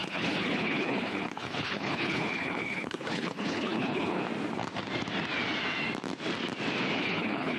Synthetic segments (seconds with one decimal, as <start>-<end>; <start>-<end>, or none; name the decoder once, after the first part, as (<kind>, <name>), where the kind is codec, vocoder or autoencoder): 0.0-4.2 (codec, HILCodec); 7.0-7.6